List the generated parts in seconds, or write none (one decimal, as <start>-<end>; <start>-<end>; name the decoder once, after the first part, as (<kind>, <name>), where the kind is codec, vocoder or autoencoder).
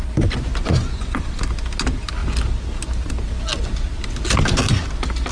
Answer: 0.6-1.4 (vocoder, Vocos)